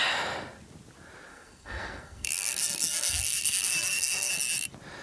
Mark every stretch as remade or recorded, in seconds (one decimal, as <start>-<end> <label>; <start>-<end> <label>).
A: 0.0-1.3 recorded; 1.3-4.3 remade; 4.3-5.0 recorded

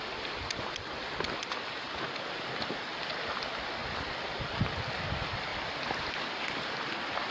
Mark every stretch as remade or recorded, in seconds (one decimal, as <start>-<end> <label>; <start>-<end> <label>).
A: 0.0-7.3 recorded

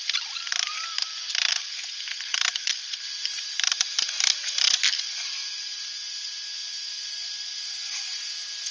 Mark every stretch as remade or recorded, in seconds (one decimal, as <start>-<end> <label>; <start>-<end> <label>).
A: 0.0-8.7 recorded

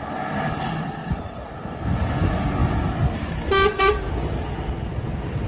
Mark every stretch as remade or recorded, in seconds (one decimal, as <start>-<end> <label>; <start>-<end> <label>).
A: 0.0-5.5 recorded

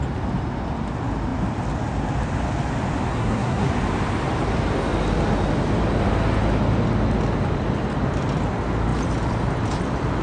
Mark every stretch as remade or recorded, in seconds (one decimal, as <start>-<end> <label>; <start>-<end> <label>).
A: 0.0-3.1 recorded; 3.1-3.7 remade; 3.7-10.2 recorded

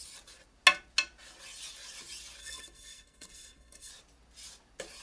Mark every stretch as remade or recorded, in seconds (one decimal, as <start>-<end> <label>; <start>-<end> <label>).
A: 0.0-2.4 recorded; 2.4-3.9 remade; 3.9-5.0 recorded